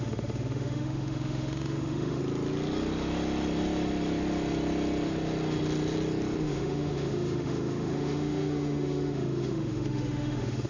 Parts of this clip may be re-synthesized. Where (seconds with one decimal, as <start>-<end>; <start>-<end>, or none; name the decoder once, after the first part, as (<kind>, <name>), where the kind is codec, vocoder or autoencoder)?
0.0-2.2 (autoencoder, DAC-VAE); 6.4-10.7